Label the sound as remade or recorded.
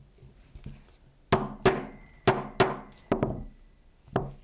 recorded